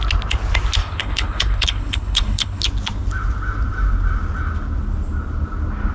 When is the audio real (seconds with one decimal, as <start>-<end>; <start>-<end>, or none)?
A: 0.0-0.8; 2.6-5.9